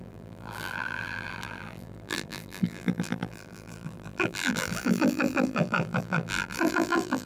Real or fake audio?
fake